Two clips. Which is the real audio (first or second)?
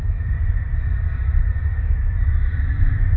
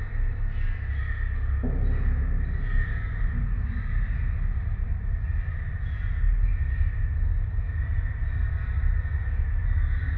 second